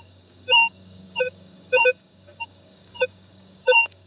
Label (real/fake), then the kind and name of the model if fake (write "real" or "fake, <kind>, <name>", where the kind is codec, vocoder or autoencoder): fake, codec, DAC